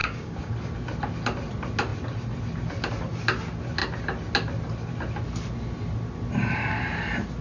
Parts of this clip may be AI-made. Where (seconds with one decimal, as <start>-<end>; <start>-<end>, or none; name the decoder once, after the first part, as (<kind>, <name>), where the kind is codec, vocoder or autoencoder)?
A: 0.0-0.5 (codec, DAC)